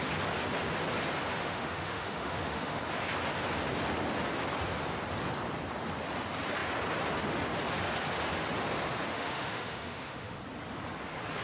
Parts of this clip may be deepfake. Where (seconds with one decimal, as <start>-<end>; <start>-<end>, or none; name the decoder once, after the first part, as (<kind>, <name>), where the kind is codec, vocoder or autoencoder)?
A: 1.3-2.8 (autoencoder, DAC-VAE); 9.1-10.4